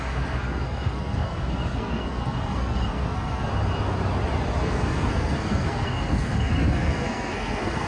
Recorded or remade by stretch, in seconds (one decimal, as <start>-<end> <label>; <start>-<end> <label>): 0.0-3.5 remade; 3.5-4.6 recorded; 4.6-7.9 remade